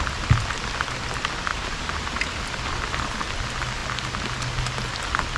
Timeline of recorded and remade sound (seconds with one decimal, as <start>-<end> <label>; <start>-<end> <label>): 0.0-1.5 recorded; 1.5-2.4 remade; 2.4-5.4 recorded